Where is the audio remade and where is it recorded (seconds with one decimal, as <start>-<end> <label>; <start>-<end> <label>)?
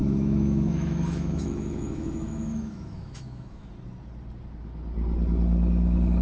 0.0-3.7 remade; 3.7-6.2 recorded